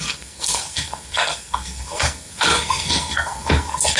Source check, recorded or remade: remade